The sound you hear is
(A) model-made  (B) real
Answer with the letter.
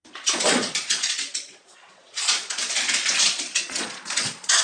A